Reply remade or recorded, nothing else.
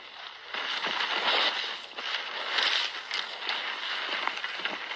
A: recorded